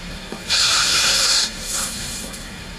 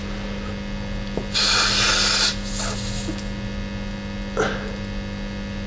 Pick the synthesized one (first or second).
first